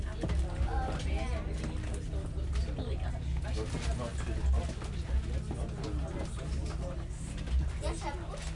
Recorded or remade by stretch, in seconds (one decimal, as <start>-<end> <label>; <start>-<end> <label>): 0.0-8.6 recorded